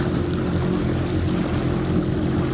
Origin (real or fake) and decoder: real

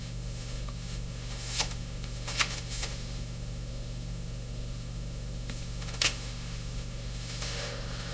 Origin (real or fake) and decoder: fake, autoencoder, DAC-VAE